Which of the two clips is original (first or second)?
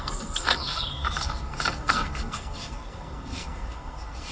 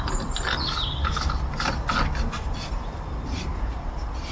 second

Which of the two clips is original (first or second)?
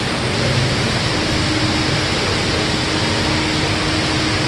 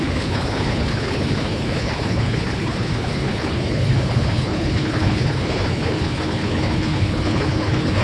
first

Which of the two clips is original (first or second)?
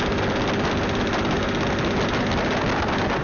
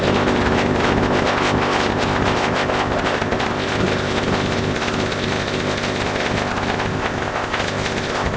first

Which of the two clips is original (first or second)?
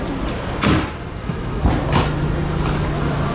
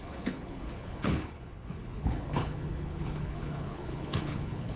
first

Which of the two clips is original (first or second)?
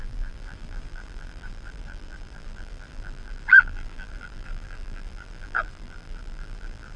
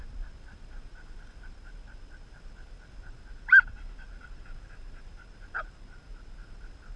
second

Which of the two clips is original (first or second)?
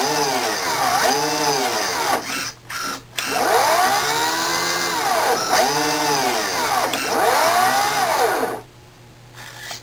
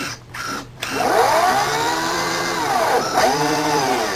first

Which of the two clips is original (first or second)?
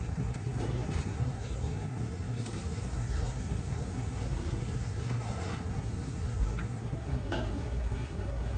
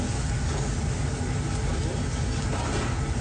second